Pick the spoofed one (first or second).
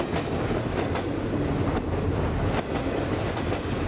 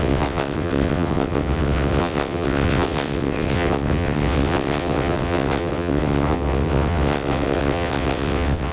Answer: second